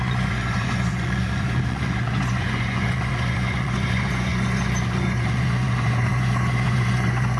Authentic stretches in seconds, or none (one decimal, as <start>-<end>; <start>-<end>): none